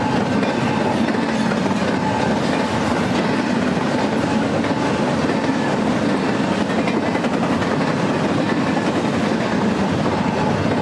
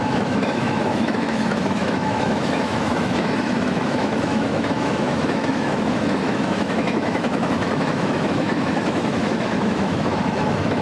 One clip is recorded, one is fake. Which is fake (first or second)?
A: second